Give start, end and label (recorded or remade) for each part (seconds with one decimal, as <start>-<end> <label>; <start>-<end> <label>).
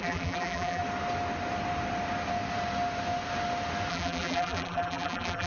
0.0-0.8 remade; 0.8-3.9 recorded; 3.9-5.5 remade